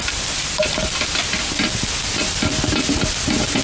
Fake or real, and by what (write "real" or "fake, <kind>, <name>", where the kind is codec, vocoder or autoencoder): real